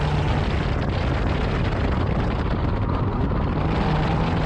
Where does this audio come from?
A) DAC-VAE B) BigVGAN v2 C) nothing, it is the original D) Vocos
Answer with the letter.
C